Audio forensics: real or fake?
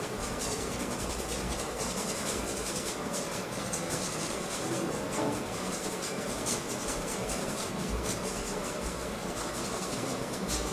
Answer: fake